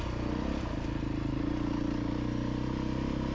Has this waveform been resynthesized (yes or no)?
no